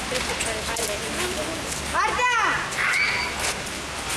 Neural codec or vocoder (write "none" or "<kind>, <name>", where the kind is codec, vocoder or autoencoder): none